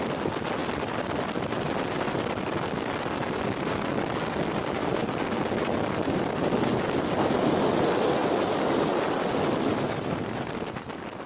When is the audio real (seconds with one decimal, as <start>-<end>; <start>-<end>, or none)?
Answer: 0.0-11.3